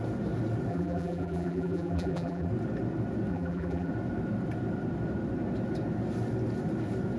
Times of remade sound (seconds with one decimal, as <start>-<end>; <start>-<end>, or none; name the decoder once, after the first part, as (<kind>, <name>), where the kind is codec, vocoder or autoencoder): 0.7-2.5 (vocoder, BigVGAN v2); 3.3-3.9